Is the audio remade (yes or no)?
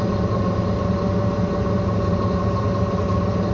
no